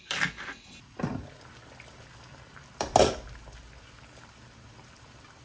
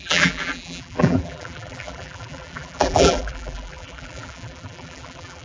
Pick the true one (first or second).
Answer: first